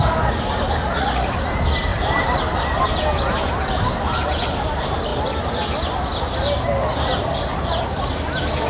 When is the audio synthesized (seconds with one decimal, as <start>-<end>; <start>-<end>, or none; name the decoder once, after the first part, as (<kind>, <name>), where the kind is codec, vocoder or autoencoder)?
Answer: 0.8-1.4 (vocoder, Vocos)